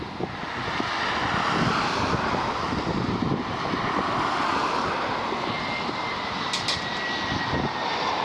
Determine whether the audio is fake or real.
real